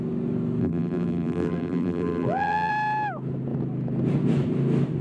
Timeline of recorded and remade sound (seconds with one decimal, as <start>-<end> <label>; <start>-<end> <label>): 0.0-0.6 recorded; 0.6-2.7 remade; 2.7-5.0 recorded